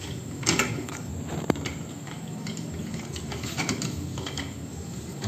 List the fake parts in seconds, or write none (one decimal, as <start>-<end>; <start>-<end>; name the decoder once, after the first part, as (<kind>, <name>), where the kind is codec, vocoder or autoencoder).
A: 0.0-1.1 (codec, DAC); 1.9-5.3